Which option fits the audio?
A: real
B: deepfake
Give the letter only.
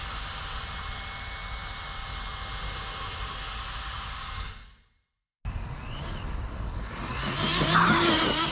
A